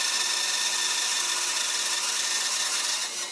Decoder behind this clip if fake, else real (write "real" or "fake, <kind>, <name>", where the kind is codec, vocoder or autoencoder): real